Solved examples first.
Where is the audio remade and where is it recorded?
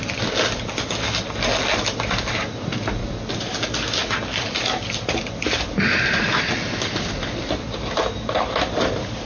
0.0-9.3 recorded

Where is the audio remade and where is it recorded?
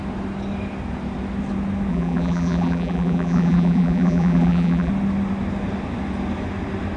0.0-1.9 recorded; 1.9-4.9 remade; 4.9-7.0 recorded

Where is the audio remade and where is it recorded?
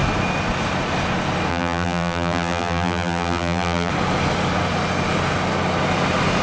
0.0-1.5 recorded; 1.5-3.9 remade; 3.9-6.4 recorded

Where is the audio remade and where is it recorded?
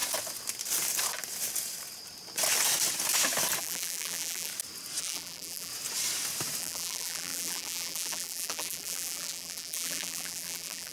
0.0-3.6 recorded; 3.6-4.5 remade; 4.5-5.0 recorded; 5.0-5.7 remade; 5.7-6.6 recorded; 6.6-10.9 remade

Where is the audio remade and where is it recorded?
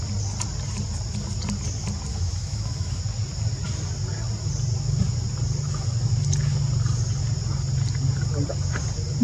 0.0-2.1 recorded; 2.1-3.0 remade; 3.0-9.2 recorded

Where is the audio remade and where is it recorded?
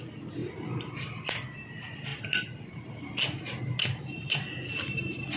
0.0-5.4 recorded